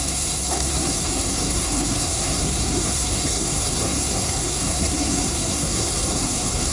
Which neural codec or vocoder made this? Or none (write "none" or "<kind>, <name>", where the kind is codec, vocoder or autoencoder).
codec, SNAC